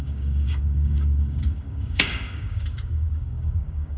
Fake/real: fake